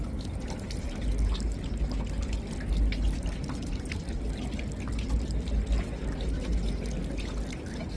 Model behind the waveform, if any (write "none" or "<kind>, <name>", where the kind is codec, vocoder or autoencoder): none